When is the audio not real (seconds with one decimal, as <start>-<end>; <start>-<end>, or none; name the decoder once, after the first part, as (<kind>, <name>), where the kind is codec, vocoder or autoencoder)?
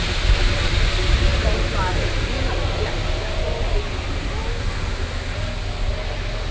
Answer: none